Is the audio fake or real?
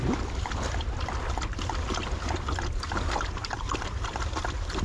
real